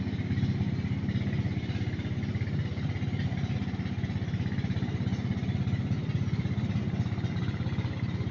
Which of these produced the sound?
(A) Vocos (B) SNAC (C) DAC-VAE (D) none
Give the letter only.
D